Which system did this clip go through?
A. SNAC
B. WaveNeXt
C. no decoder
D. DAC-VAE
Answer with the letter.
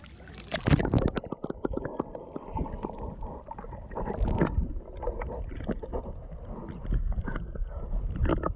C